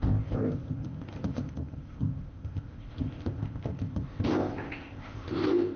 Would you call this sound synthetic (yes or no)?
yes